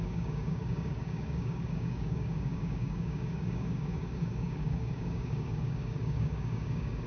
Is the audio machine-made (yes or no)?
yes